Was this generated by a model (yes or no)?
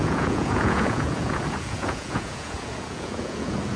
yes